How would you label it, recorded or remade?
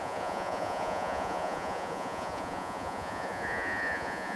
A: remade